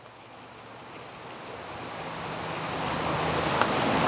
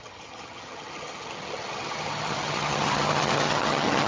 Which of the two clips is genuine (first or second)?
first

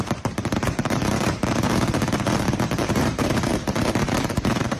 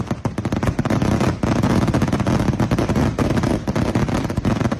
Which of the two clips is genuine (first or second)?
second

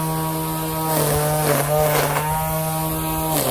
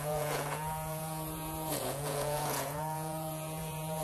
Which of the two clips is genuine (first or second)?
first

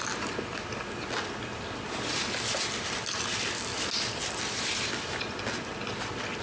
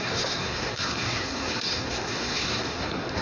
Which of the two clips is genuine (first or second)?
first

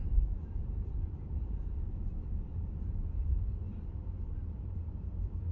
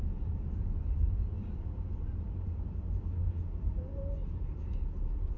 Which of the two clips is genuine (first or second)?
second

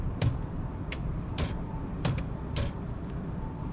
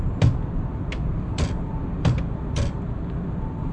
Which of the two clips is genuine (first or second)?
second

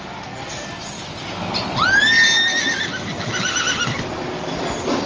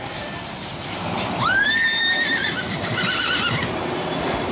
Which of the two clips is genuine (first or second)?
first